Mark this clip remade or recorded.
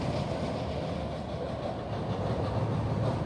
recorded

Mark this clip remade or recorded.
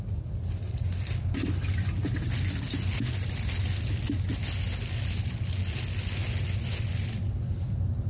recorded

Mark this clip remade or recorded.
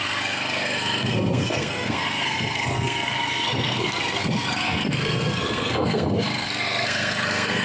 remade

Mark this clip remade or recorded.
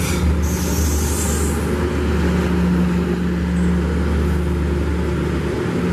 recorded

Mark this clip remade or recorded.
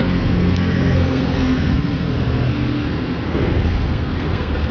remade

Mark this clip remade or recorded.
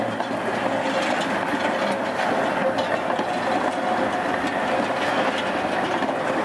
recorded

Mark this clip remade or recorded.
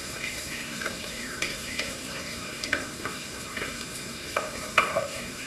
remade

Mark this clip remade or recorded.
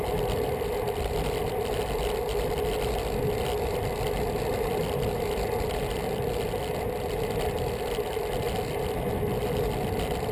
recorded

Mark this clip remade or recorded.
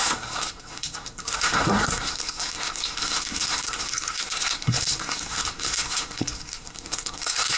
remade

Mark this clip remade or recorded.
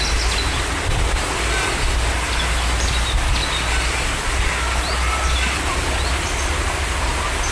recorded